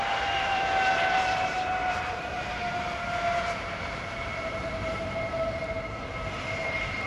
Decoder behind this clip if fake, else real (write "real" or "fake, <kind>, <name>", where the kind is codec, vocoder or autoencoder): fake, vocoder, BigVGAN v2